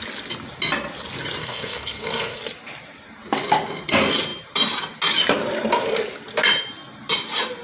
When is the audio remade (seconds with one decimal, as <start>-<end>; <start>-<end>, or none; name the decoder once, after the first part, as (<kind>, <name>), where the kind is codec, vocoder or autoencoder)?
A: 1.4-2.4 (codec, SNAC)